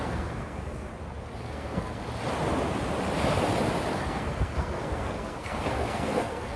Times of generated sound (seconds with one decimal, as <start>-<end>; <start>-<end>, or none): 0.0-0.9; 1.4-2.0; 4.0-6.6